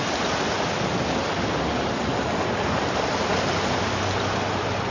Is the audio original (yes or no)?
yes